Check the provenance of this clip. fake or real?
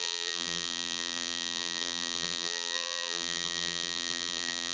fake